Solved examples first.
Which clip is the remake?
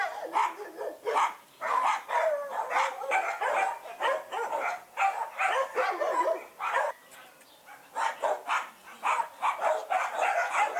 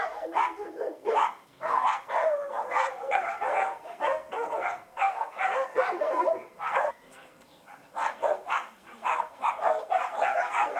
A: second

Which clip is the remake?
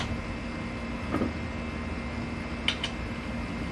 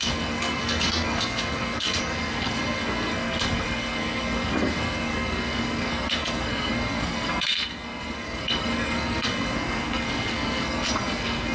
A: second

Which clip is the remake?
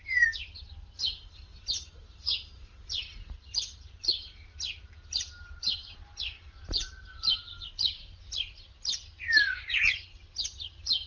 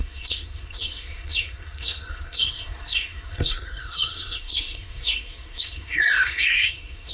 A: second